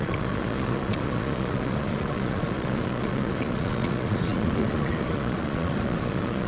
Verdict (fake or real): fake